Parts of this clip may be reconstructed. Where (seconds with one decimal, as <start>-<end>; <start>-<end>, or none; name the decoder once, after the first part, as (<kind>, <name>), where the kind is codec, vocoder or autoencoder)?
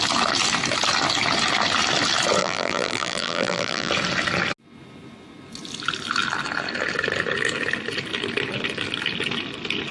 2.4-3.9 (vocoder, BigVGAN v2)